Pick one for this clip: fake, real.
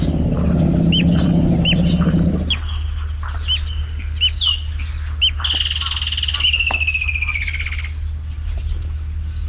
real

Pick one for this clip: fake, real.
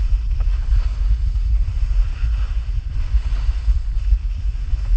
real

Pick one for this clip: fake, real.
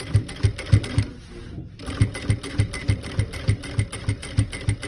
real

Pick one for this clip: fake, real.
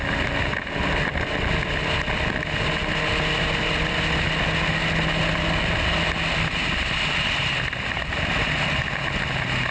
real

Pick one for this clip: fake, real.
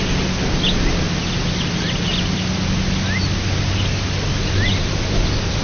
real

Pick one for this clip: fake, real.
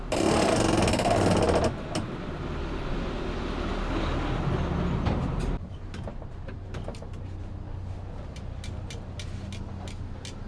real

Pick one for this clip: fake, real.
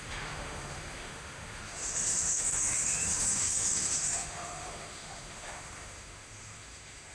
fake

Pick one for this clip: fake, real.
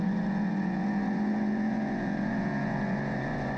fake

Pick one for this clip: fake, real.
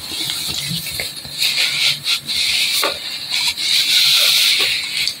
real